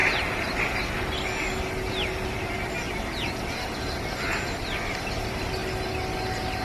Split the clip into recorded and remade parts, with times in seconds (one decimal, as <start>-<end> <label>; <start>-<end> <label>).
0.0-6.6 recorded